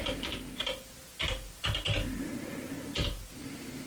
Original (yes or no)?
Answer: yes